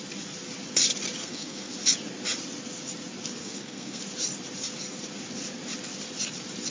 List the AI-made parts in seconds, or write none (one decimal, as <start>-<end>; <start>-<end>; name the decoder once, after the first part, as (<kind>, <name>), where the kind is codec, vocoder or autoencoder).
1.2-1.7 (codec, SNAC); 3.4-4.0